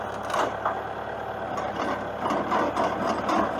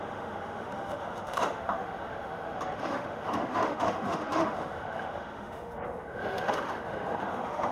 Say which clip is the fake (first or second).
second